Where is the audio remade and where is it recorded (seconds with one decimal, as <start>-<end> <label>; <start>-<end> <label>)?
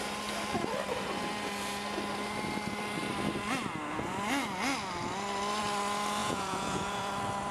0.0-6.2 recorded; 6.2-7.1 remade; 7.1-7.5 recorded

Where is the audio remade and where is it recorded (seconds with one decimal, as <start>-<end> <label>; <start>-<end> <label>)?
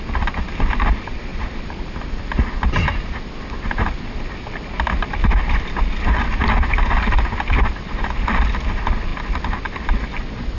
0.0-10.6 recorded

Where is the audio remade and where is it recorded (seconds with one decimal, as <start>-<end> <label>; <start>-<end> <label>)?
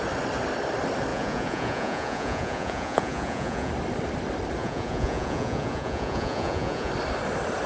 0.0-1.1 recorded; 1.1-3.7 remade; 3.7-4.6 recorded; 4.6-6.9 remade; 6.9-7.7 recorded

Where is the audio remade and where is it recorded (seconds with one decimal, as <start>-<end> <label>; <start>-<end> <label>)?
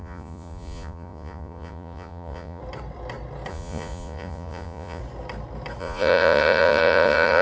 0.0-2.6 remade; 2.6-3.5 recorded; 3.5-5.0 remade; 5.0-5.8 recorded; 5.8-7.4 remade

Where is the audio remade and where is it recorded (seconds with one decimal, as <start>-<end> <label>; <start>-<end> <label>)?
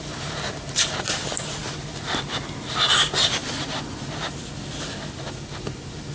0.0-6.1 recorded